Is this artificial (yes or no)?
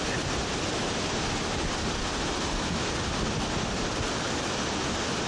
no